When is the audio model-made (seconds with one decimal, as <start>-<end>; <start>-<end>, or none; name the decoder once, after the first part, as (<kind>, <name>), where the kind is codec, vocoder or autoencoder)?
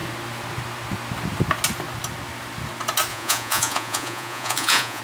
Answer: 3.1-5.0 (vocoder, Vocos)